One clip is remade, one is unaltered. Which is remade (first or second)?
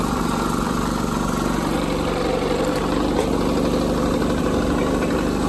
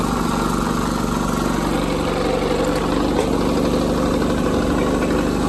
first